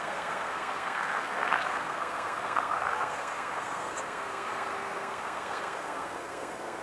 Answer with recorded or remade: remade